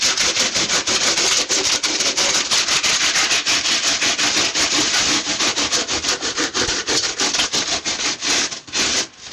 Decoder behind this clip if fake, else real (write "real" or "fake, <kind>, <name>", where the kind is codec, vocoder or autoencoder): real